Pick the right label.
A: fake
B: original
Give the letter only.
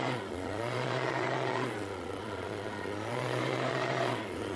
A